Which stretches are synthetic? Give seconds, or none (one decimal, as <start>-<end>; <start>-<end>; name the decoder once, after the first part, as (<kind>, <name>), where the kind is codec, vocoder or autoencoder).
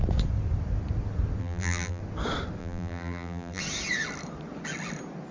1.4-2.0 (vocoder, BigVGAN v2); 2.6-3.6